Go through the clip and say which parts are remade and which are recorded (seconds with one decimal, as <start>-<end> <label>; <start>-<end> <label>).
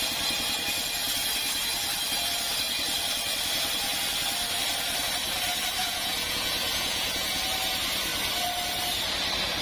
0.0-5.8 recorded; 5.8-7.4 remade; 7.4-9.6 recorded